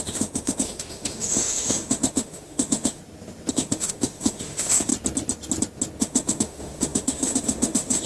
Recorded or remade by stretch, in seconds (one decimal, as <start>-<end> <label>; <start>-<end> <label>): 0.0-3.0 remade; 3.0-3.5 recorded; 3.5-4.9 remade; 4.9-6.0 recorded; 6.0-8.1 remade